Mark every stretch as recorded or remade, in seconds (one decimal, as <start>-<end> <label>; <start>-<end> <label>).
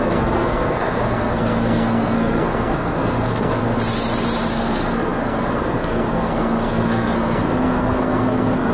0.0-3.6 remade; 3.6-4.5 recorded; 4.5-8.7 remade